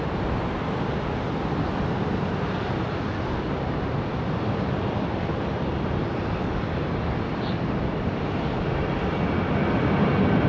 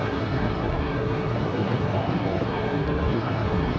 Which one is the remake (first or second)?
second